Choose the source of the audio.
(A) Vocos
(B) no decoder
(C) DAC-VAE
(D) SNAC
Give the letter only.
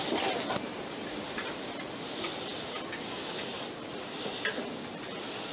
B